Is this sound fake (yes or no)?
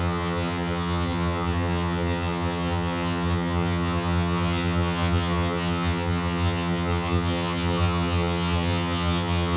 yes